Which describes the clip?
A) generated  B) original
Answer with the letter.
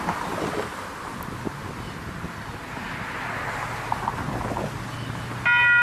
B